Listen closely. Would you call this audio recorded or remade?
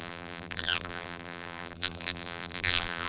remade